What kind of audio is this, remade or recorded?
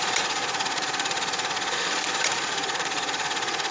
remade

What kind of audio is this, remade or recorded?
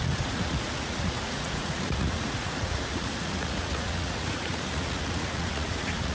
remade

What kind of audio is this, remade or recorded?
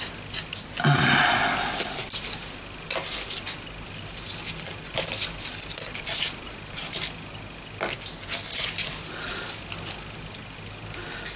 recorded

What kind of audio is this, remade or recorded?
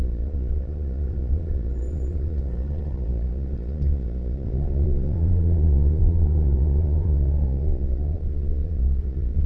remade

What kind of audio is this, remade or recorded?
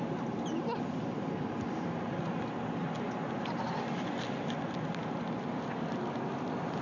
recorded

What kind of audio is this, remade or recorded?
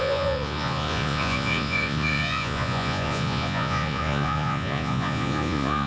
remade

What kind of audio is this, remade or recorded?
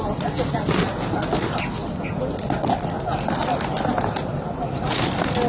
recorded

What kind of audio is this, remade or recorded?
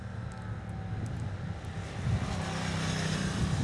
recorded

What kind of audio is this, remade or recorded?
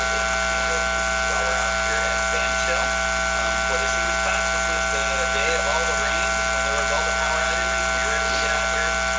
recorded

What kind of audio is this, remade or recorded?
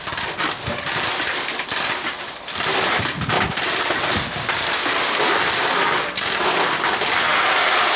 recorded